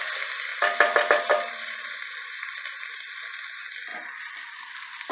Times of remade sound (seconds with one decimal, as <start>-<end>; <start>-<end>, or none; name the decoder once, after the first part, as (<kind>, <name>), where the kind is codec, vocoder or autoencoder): 0.0-5.1 (vocoder, BigVGAN v2)